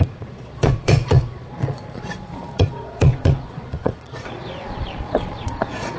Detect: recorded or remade remade